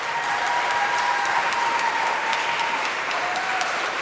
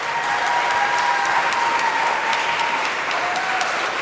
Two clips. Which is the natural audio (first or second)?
second